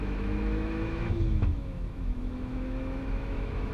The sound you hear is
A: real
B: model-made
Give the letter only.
B